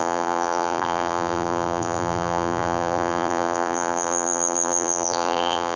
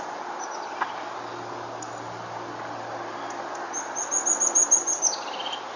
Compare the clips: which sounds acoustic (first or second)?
second